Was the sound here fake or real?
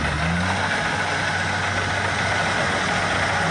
real